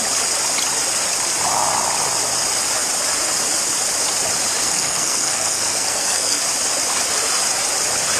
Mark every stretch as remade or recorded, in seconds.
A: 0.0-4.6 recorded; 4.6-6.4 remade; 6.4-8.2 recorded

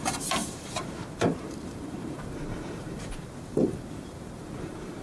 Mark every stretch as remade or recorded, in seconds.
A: 0.0-5.0 remade

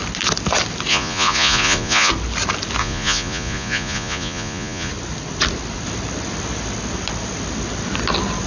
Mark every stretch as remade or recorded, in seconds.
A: 0.0-0.9 recorded; 0.9-2.1 remade; 2.1-2.8 recorded; 2.8-4.9 remade; 4.9-8.5 recorded

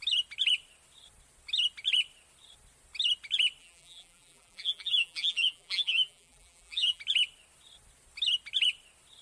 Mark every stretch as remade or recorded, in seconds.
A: 0.0-3.6 recorded; 3.6-7.0 remade; 7.0-9.2 recorded

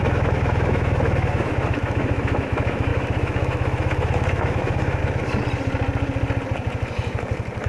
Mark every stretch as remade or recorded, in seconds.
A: 0.0-5.0 remade; 5.0-7.7 recorded